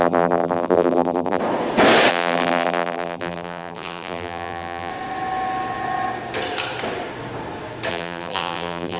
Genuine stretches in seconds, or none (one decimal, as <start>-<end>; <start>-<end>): 1.4-2.1; 4.9-7.9